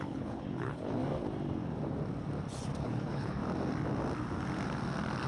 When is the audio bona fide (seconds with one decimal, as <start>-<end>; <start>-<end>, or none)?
1.0-2.8; 3.4-5.3